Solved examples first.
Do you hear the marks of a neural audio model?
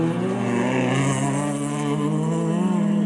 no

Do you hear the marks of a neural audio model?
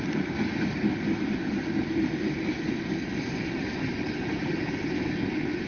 no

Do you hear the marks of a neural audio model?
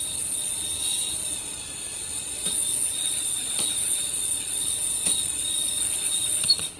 yes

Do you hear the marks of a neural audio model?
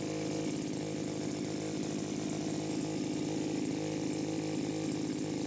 no